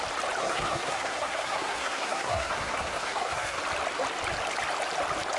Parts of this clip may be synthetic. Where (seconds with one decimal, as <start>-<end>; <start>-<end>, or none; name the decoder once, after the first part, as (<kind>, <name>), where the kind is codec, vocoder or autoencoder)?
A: 0.4-3.6 (codec, SNAC)